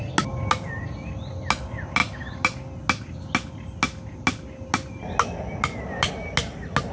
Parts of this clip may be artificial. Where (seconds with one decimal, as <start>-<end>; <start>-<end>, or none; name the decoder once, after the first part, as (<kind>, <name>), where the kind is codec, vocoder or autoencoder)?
none